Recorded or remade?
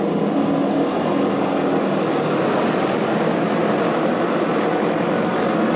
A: recorded